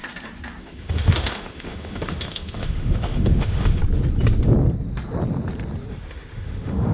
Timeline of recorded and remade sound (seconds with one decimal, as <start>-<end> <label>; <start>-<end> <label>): 0.0-0.6 recorded; 0.6-3.8 remade; 3.8-5.9 recorded; 5.9-6.9 remade